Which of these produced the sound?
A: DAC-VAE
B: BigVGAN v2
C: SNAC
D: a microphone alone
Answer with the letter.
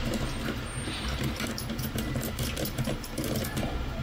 D